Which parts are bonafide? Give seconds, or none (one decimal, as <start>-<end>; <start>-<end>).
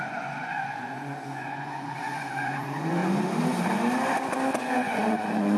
3.0-4.6